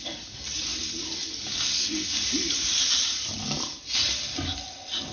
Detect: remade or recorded recorded